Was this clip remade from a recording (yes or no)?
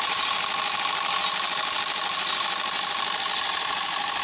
no